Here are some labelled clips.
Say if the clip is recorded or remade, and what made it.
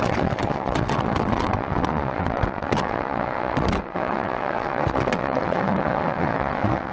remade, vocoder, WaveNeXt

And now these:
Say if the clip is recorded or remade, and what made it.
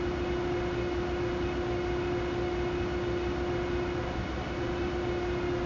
recorded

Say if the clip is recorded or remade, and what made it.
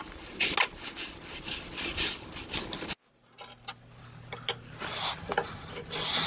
recorded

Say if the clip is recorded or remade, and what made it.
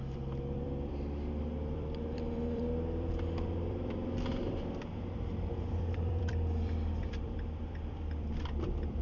remade, vocoder, BigVGAN v2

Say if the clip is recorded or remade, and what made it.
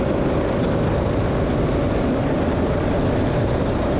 recorded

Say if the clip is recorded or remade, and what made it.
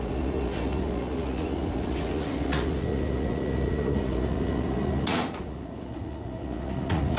remade, vocoder, Vocos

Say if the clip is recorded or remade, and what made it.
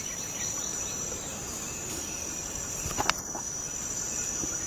remade, vocoder, BigVGAN v2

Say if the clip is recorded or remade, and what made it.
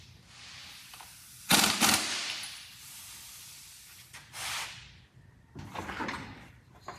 recorded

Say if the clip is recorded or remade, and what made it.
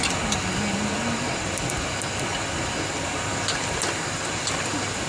recorded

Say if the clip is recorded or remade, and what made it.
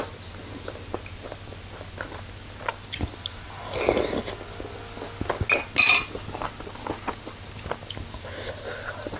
recorded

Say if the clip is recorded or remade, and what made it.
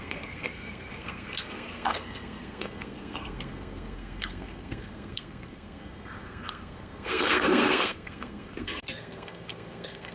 remade, codec, SNAC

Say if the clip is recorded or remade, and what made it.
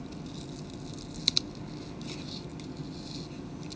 recorded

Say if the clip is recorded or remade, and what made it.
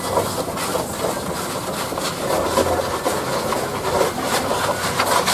recorded